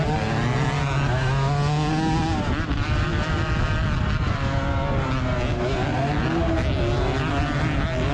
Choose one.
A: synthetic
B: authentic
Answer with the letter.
B